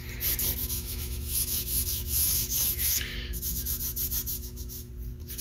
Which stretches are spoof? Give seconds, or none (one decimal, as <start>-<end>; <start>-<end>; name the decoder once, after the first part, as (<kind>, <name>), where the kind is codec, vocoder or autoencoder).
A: 0.6-3.8 (autoencoder, DAC-VAE); 4.3-4.9